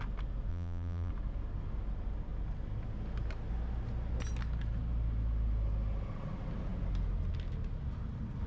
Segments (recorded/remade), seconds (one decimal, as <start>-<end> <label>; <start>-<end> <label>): 0.0-0.5 recorded; 0.5-1.1 remade; 1.1-8.5 recorded